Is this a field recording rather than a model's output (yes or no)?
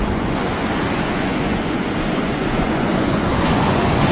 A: no